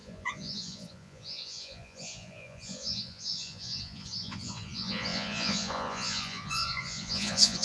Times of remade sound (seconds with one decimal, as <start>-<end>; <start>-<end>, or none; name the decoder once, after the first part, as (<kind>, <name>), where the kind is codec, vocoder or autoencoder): 0.0-7.6 (vocoder, Vocos)